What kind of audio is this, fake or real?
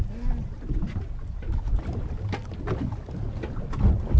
real